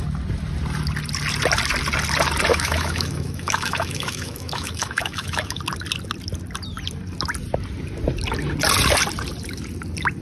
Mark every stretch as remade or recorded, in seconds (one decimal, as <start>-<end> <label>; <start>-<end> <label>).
0.0-2.5 recorded; 2.5-5.6 remade; 5.6-10.2 recorded